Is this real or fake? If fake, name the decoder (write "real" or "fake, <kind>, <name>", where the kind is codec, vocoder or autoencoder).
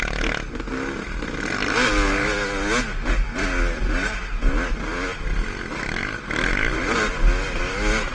real